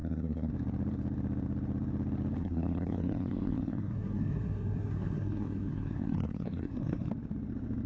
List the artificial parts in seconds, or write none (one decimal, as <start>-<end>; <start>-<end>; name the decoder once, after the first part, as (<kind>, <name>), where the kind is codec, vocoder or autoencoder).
0.0-0.5 (codec, SNAC); 2.4-7.1